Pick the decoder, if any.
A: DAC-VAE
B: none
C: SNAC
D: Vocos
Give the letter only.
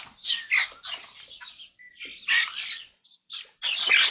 B